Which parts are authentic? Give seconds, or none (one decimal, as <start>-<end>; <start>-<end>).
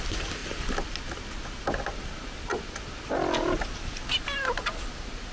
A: 0.0-5.3